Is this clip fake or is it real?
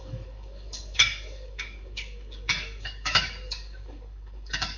fake